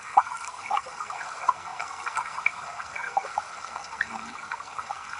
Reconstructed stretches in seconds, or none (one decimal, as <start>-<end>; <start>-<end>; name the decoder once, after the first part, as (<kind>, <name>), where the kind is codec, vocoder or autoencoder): 0.0-5.2 (codec, SNAC)